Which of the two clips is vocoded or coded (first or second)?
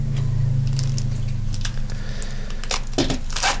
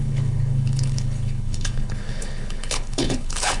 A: second